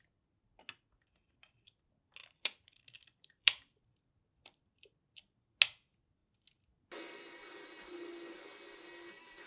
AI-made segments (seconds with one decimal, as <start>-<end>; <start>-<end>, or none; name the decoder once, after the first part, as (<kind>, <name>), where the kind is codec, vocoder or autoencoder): 2.2-4.8 (vocoder, BigVGAN v2)